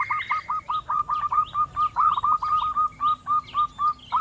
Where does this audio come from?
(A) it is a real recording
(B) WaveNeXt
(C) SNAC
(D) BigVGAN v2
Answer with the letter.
A